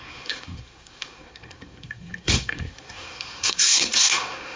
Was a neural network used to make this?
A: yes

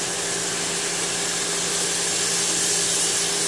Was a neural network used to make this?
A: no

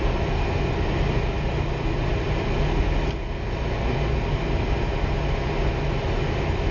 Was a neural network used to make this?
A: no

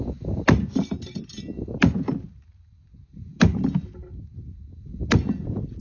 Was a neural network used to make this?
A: no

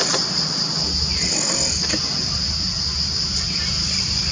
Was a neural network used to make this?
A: no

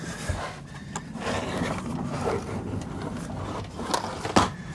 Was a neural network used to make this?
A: no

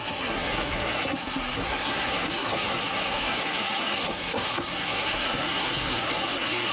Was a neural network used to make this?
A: yes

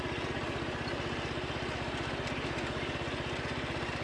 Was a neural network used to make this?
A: no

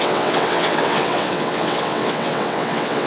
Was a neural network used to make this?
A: yes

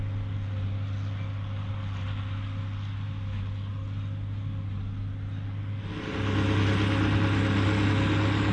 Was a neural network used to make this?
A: no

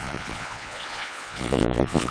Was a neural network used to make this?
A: yes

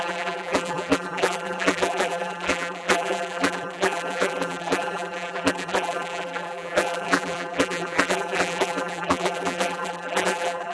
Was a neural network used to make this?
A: yes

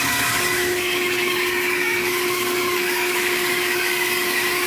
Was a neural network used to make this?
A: yes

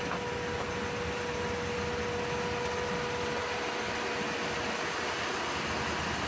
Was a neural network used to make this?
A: no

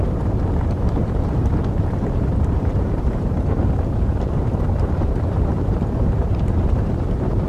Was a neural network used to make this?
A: yes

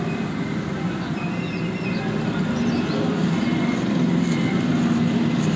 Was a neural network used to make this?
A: no